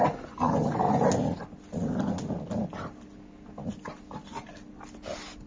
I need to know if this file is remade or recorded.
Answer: recorded